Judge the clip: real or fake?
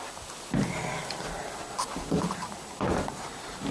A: fake